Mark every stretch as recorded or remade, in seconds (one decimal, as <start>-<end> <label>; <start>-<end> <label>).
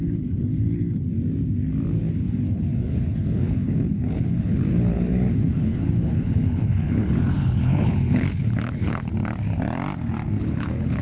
0.0-1.1 remade; 1.1-2.1 recorded; 2.1-9.1 remade; 9.1-10.4 recorded; 10.4-11.0 remade